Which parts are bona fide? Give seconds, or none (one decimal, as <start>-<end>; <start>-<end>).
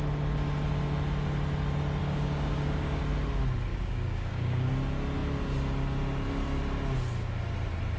0.0-2.0; 3.0-3.7; 4.7-8.0